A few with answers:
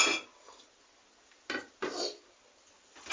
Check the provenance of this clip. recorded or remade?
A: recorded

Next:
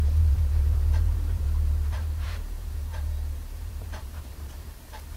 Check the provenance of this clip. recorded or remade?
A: remade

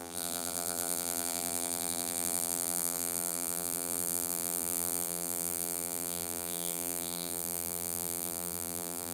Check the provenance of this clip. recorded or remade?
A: remade